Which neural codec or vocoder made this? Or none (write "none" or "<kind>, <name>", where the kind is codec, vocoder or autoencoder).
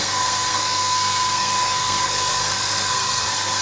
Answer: codec, SNAC